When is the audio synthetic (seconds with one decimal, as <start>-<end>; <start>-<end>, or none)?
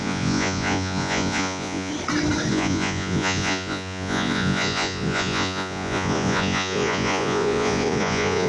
0.0-1.9; 2.5-8.5